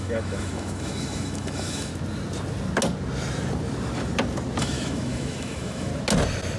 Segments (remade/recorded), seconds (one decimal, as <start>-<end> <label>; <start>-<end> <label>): 0.0-1.9 remade; 1.9-4.6 recorded; 4.6-5.9 remade; 5.9-6.6 recorded